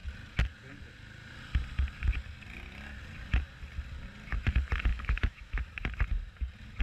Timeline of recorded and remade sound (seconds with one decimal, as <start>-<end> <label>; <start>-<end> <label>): 0.0-4.9 recorded; 4.9-5.6 remade; 5.6-6.8 recorded